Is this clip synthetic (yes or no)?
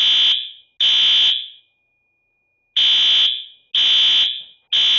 no